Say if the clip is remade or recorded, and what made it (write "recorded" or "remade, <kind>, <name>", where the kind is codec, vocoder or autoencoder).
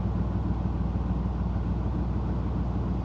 recorded